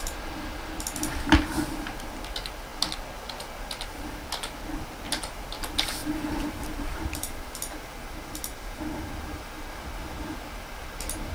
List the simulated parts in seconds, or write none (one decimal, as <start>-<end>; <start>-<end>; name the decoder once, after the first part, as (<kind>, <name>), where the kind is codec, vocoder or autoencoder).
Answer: 6.0-7.9 (vocoder, BigVGAN v2)